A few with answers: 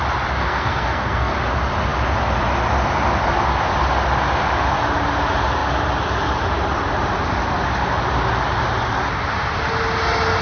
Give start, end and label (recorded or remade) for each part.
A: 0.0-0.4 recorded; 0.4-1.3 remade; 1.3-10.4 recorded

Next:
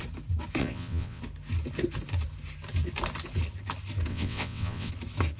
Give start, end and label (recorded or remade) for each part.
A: 0.0-0.6 recorded; 0.6-1.2 remade; 1.2-4.1 recorded; 4.1-4.9 remade; 4.9-5.4 recorded

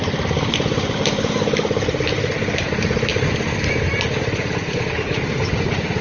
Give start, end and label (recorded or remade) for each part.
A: 0.0-3.1 remade; 3.1-4.2 recorded; 4.2-6.0 remade

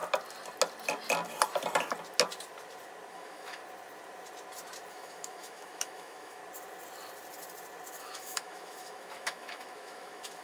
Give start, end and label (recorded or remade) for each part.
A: 0.0-3.1 recorded; 3.1-3.6 remade; 3.6-4.9 recorded; 4.9-6.4 remade; 6.4-8.0 recorded; 8.0-10.4 remade

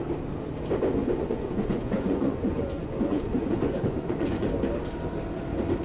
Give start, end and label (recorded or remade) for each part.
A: 0.0-1.0 recorded; 1.0-4.5 remade; 4.5-5.8 recorded

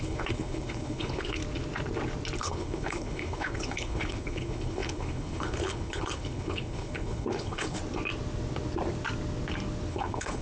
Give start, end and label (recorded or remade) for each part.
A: 0.0-1.4 remade; 1.4-2.4 recorded; 2.4-7.8 remade; 7.8-9.9 recorded; 9.9-10.4 remade

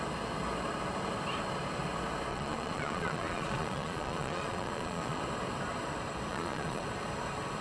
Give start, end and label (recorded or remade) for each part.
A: 0.0-2.3 recorded; 2.3-5.2 remade; 5.2-6.3 recorded; 6.3-6.8 remade; 6.8-7.6 recorded

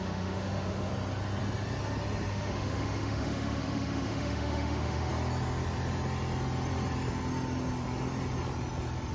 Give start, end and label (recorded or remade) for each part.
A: 0.0-0.9 remade; 0.9-2.3 recorded; 2.3-5.1 remade; 5.1-9.1 recorded